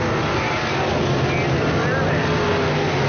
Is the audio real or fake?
real